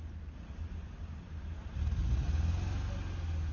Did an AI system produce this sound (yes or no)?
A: no